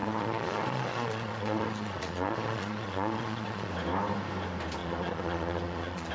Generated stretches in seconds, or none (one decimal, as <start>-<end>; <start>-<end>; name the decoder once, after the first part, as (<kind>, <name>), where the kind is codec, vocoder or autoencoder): 0.0-3.7 (vocoder, Vocos); 4.8-6.1